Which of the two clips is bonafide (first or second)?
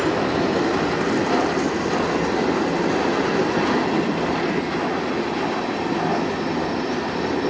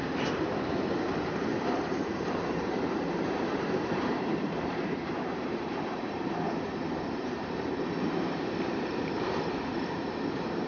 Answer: first